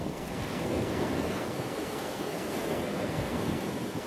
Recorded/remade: remade